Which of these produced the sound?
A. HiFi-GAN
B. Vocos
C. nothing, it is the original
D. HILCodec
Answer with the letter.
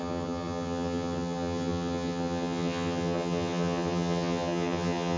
A